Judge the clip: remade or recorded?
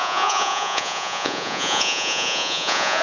remade